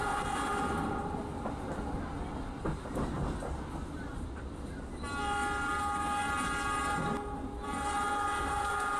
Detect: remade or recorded recorded